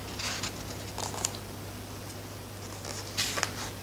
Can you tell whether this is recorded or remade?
recorded